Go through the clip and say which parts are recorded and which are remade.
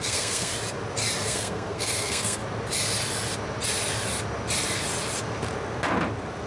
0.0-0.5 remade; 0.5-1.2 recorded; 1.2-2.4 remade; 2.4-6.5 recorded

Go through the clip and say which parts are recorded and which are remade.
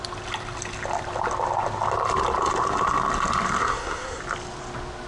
0.0-3.6 recorded; 3.6-4.2 remade; 4.2-5.1 recorded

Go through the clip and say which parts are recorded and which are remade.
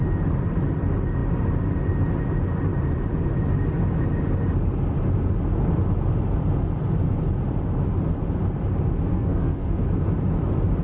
0.0-9.1 recorded; 9.1-9.8 remade; 9.8-10.8 recorded